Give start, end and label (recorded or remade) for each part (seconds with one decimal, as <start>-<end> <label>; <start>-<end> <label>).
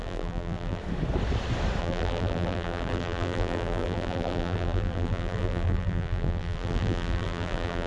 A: 0.0-0.8 remade; 0.8-1.8 recorded; 1.8-7.9 remade